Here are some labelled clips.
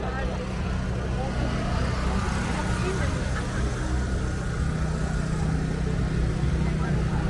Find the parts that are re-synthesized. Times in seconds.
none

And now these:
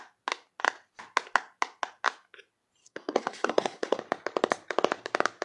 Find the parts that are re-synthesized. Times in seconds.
2.8-4.0 (codec, SNAC)

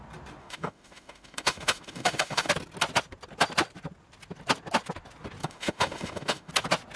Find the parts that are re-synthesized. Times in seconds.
0.4-2.5 (autoencoder, DAC-VAE); 5.4-6.5